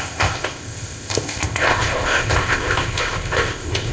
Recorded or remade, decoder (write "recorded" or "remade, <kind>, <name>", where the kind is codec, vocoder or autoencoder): remade, codec, ZipCodec